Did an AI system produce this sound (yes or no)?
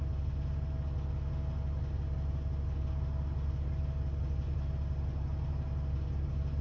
no